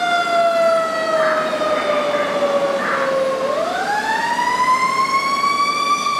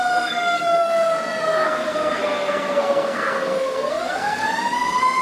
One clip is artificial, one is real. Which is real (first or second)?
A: first